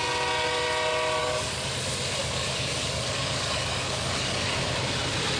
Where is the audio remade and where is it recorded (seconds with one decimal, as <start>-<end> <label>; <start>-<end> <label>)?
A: 0.0-1.2 recorded; 1.2-1.8 remade; 1.8-2.2 recorded; 2.2-4.7 remade; 4.7-5.4 recorded